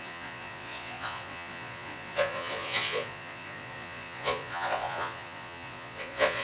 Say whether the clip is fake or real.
fake